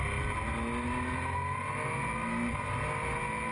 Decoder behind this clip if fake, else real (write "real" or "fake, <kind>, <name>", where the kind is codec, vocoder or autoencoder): real